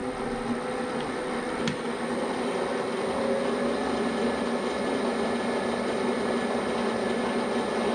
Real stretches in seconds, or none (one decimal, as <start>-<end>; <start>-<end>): 0.0-7.9